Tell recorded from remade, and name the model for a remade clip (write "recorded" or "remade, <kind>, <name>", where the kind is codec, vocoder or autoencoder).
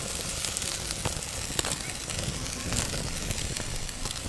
recorded